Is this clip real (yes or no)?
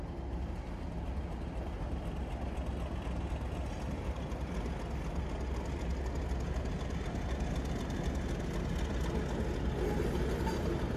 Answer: yes